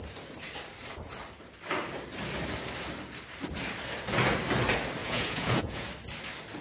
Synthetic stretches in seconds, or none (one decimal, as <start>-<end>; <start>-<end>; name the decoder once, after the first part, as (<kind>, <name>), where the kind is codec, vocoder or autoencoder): 5.0-5.9 (vocoder, Vocos)